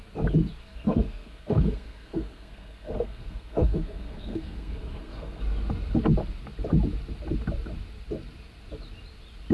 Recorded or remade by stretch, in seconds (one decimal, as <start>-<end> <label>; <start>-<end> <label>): 0.0-0.6 recorded; 0.6-5.4 remade; 5.4-9.5 recorded